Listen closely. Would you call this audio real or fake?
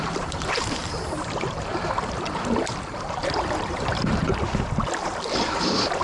fake